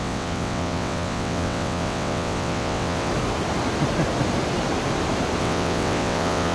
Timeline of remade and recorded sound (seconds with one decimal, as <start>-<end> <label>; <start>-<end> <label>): 0.0-3.1 remade; 3.1-5.4 recorded; 5.4-6.5 remade